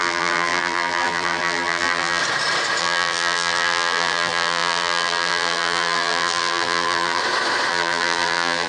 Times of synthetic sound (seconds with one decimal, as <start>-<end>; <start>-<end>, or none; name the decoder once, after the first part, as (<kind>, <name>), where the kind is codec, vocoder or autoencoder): 0.0-2.2 (vocoder, BigVGAN v2); 2.8-7.2; 7.7-8.7